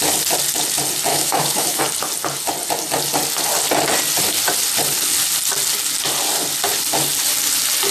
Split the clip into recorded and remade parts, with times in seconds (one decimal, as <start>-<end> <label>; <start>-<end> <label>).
0.0-1.1 recorded; 1.1-1.8 remade; 1.8-7.9 recorded